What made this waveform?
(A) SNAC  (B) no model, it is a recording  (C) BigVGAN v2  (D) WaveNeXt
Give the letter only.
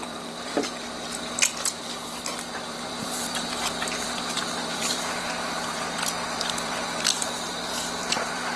C